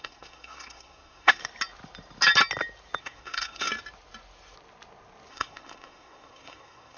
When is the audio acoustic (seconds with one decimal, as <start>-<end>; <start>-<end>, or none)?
1.4-3.0; 3.7-5.3